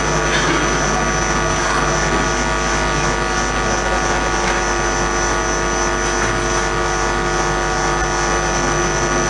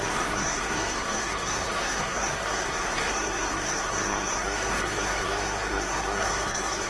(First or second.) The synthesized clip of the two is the second